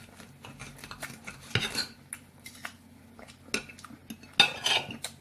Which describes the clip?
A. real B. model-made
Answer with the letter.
A